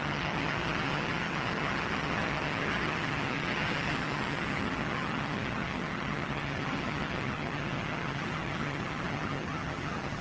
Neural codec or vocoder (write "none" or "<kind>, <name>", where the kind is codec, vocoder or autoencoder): vocoder, HiFi-GAN